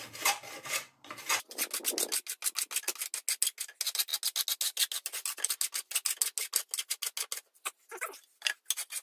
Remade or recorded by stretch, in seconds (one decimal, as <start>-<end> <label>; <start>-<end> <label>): 0.0-9.0 recorded